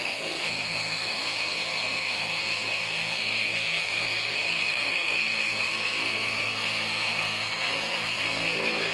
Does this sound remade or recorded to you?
remade